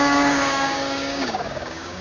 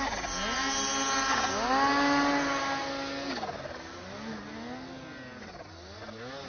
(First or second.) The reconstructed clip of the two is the first